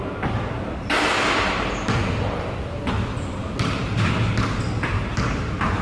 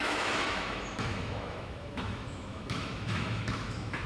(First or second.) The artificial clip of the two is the second